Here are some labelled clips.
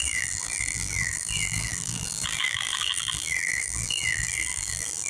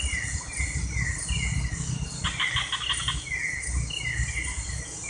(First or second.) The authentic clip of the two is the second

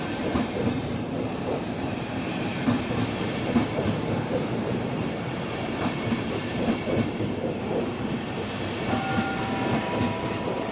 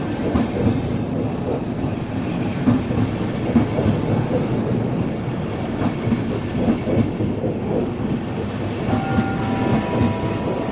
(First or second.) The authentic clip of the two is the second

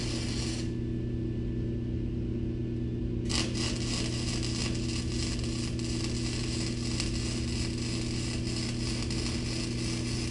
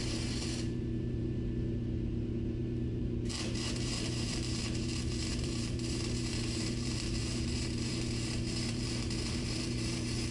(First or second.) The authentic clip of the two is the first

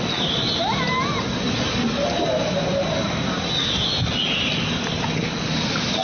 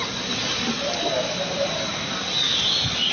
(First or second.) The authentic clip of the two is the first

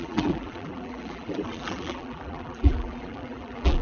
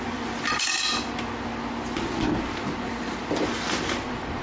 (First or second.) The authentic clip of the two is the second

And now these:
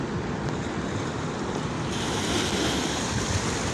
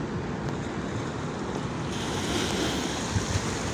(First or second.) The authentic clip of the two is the second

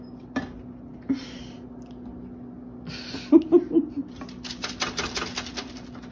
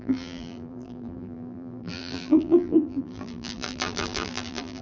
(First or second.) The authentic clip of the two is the first